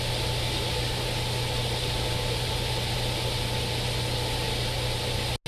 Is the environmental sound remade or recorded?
recorded